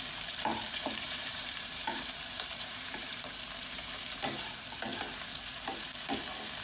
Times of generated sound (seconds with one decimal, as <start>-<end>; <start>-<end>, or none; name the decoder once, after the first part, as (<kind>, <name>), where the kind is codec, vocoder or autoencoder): 0.5-4.5 (vocoder, BigVGAN v2); 4.9-5.8